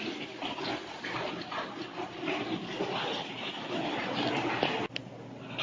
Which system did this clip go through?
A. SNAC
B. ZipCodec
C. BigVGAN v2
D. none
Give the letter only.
D